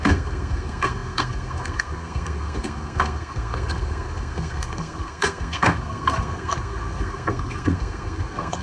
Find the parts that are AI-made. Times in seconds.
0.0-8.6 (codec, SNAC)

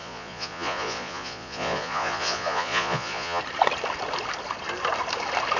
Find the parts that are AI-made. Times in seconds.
0.0-3.4 (vocoder, Vocos)

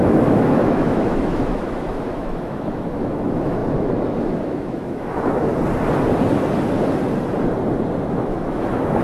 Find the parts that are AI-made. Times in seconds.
0.0-5.5 (autoencoder, DAC-VAE); 8.1-9.0

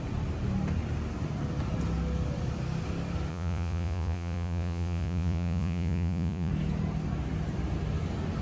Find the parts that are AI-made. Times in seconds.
3.3-6.5 (vocoder, Vocos)

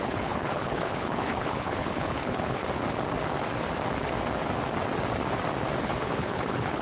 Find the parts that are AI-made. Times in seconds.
0.0-2.6 (codec, HILCodec); 5.8-6.8

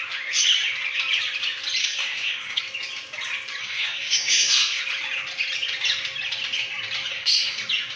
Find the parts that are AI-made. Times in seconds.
1.8-2.6 (codec, SNAC); 3.6-4.8; 7.1-7.6

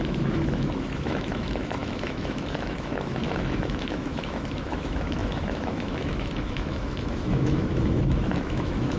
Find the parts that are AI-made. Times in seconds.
0.0-9.0 (autoencoder, DAC-VAE)